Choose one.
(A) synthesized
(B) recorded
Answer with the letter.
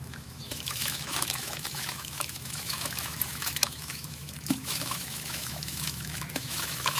A